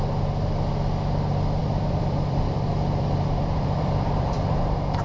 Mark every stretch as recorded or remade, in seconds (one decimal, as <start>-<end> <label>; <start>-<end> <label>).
0.0-1.6 recorded; 1.6-4.6 remade; 4.6-5.0 recorded